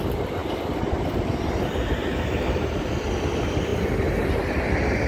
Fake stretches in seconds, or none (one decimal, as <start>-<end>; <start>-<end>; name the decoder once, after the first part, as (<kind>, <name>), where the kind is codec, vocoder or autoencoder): 1.8-2.9 (vocoder, BigVGAN v2)